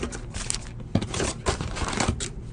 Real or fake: real